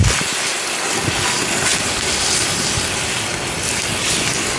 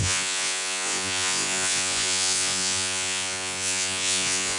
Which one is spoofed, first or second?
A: second